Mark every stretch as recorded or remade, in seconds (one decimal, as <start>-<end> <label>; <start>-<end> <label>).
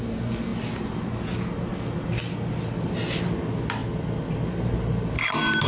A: 0.0-5.7 recorded